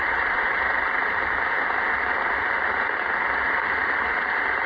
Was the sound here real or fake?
fake